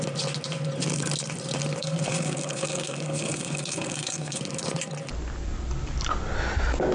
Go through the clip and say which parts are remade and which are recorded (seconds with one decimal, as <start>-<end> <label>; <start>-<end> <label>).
0.0-1.8 recorded; 1.8-4.4 remade; 4.4-6.9 recorded